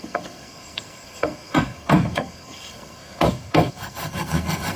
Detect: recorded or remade remade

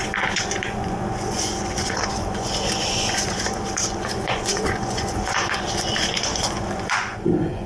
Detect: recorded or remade remade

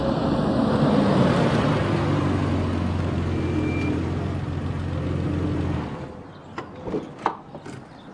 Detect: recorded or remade recorded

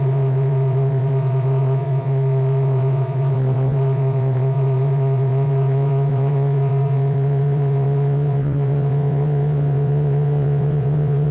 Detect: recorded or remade remade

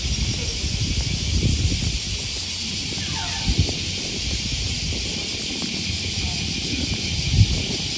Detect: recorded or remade recorded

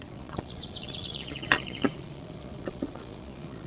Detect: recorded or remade remade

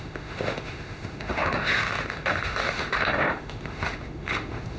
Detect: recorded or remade remade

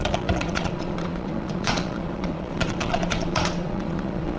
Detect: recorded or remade remade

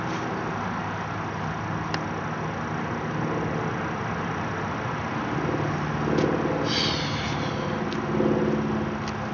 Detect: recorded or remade recorded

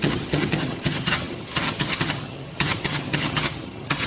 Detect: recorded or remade remade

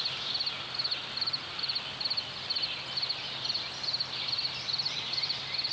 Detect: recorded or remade recorded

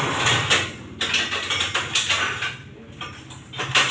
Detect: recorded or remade recorded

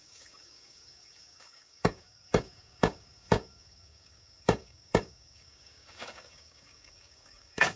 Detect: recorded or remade remade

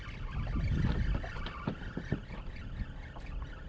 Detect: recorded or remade recorded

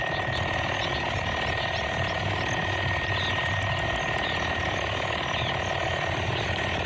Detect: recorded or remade recorded